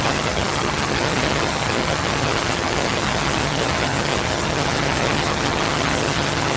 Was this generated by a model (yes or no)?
yes